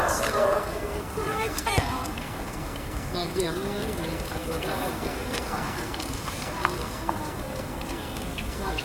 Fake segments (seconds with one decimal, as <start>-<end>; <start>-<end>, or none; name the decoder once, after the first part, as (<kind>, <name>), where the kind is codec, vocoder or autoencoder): 0.0-8.8 (codec, SNAC)